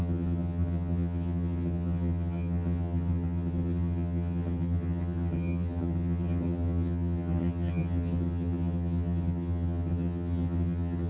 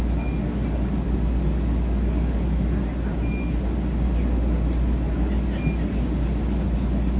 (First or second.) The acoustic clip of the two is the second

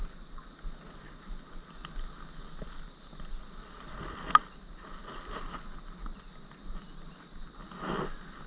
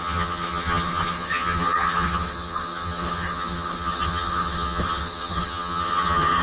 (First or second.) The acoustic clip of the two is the first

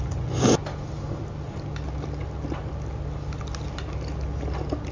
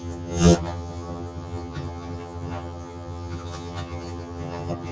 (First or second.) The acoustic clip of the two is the first